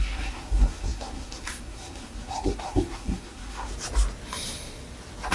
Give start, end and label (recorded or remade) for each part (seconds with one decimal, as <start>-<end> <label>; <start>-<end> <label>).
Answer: 0.0-3.7 remade; 3.7-5.3 recorded